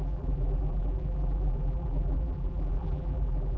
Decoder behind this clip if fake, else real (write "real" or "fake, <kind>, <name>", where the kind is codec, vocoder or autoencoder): fake, vocoder, BigVGAN v2